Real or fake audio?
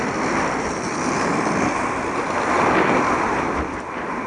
real